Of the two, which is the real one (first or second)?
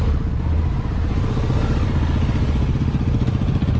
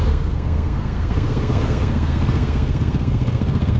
first